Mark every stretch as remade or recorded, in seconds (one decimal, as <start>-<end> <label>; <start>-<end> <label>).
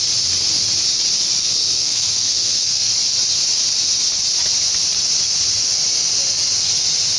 0.0-1.4 recorded; 1.4-2.9 remade; 2.9-7.2 recorded